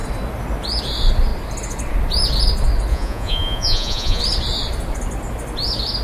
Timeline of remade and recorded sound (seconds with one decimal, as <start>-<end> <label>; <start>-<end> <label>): 0.0-2.9 recorded; 2.9-4.2 remade; 4.2-6.0 recorded